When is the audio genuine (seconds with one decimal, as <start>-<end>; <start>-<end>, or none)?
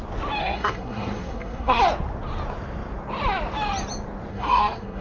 0.0-0.4; 1.8-4.3